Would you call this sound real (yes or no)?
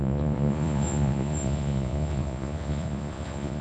no